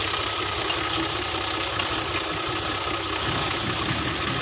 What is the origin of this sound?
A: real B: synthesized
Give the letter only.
A